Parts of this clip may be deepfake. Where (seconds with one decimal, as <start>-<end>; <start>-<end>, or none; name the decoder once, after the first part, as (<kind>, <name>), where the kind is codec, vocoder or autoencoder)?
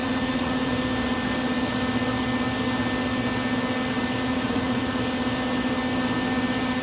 0.0-0.7 (vocoder, Vocos); 4.3-5.0